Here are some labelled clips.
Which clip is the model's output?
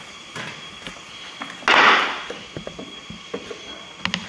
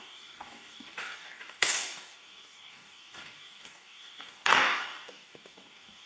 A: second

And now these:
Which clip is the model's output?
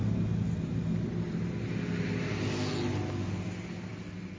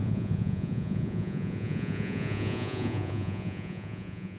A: second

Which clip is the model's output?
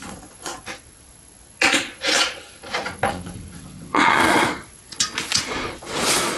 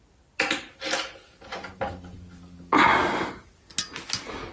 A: first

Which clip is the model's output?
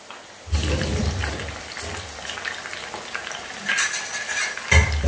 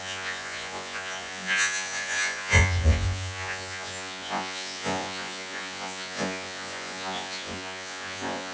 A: second